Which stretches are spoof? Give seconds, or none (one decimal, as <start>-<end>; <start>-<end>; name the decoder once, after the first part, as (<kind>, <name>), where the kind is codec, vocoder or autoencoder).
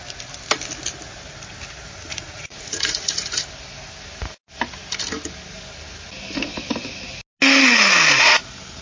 2.1-3.4 (vocoder, Vocos)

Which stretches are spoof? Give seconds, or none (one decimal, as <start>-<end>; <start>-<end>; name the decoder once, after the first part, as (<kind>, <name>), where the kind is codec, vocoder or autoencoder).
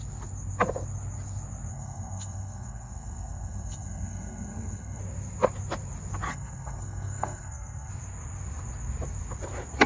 1.7-5.0 (codec, SNAC); 6.3-7.9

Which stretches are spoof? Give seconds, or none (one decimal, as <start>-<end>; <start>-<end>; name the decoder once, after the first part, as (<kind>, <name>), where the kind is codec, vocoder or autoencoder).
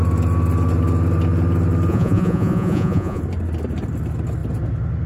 1.9-3.2 (vocoder, Vocos)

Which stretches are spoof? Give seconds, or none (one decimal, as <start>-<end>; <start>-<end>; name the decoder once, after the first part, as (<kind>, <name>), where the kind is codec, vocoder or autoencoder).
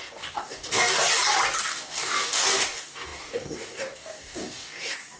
0.0-1.0 (codec, DAC); 1.6-5.2